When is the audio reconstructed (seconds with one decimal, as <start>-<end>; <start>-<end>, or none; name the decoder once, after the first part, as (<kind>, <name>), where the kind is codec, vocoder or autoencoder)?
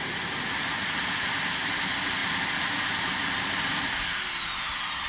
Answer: none